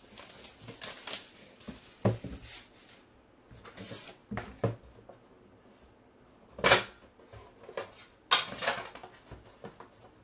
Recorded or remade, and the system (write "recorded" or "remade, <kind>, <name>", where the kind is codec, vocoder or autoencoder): recorded